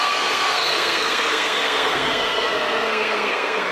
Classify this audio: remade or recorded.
remade